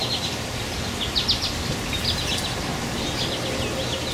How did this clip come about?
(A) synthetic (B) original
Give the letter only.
B